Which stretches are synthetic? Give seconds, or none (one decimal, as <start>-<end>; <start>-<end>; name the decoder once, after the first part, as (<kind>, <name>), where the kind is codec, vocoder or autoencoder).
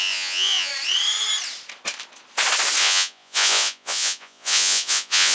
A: 0.0-0.7 (vocoder, Vocos); 2.8-5.3